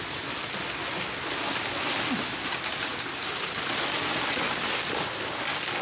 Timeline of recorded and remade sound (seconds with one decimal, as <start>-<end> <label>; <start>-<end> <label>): 0.0-5.8 recorded